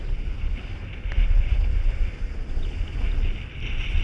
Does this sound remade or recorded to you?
recorded